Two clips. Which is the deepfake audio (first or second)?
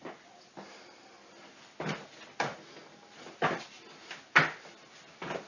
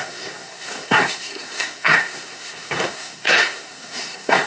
second